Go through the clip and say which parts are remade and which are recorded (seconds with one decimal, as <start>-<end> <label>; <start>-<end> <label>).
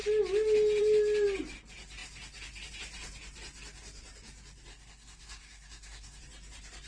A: 0.0-4.7 recorded; 4.7-6.2 remade; 6.2-6.9 recorded